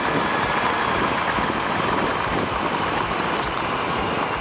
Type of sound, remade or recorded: recorded